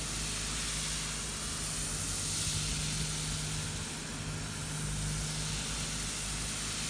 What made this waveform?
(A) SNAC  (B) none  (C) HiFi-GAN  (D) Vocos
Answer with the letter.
B